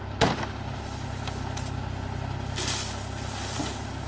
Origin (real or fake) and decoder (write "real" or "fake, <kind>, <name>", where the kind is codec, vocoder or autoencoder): real